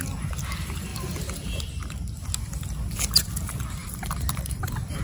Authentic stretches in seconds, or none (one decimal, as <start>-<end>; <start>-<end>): 0.0-0.9; 1.6-3.8; 4.6-5.0